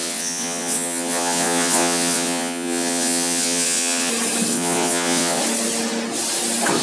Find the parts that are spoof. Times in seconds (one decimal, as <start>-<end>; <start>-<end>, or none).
0.0-4.1; 4.5-5.4